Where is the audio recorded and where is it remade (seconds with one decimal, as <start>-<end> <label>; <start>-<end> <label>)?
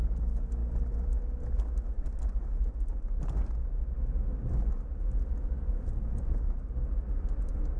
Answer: 0.0-7.8 recorded